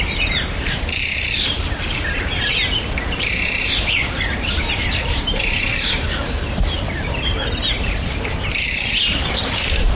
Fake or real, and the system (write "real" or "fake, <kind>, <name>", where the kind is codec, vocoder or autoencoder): fake, vocoder, BigVGAN v2